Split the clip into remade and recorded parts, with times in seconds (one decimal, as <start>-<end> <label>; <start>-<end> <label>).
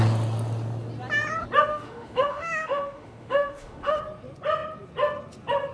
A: 0.0-1.7 recorded; 1.7-4.0 remade; 4.0-5.7 recorded